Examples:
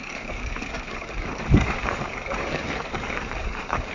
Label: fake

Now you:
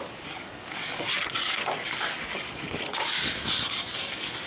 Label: fake